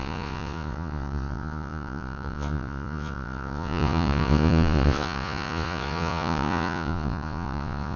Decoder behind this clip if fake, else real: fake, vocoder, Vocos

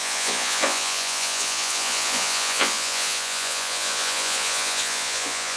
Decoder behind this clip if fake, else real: fake, vocoder, Vocos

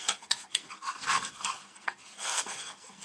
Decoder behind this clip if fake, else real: fake, codec, SNAC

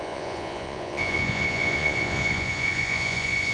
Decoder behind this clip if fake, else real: fake, vocoder, Vocos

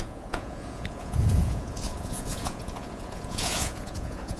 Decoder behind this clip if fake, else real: fake, vocoder, Vocos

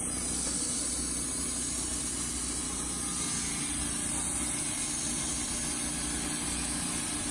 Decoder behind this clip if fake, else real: real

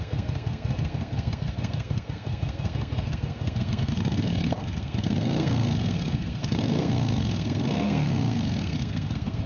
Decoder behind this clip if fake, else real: fake, codec, SNAC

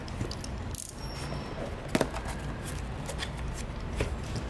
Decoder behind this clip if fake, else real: real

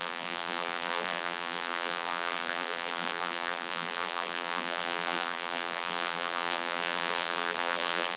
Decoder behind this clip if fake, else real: fake, vocoder, BigVGAN v2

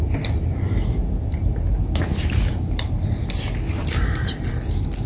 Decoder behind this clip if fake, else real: real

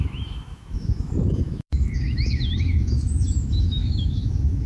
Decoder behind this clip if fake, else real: fake, autoencoder, DAC-VAE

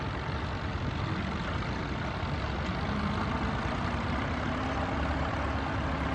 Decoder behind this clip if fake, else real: real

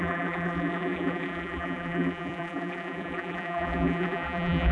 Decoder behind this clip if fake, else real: fake, vocoder, BigVGAN v2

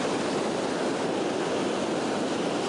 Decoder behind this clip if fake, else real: real